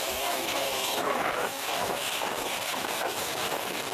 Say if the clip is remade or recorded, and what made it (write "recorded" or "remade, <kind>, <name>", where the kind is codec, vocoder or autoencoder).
remade, codec, DAC